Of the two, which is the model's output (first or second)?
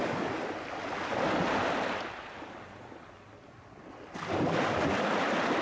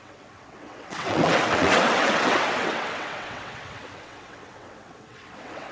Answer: second